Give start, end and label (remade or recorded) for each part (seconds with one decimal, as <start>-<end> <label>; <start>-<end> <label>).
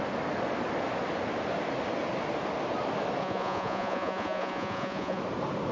0.0-3.2 recorded; 3.2-5.2 remade; 5.2-5.7 recorded